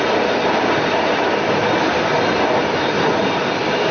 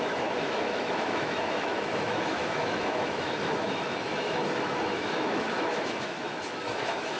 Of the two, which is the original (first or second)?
first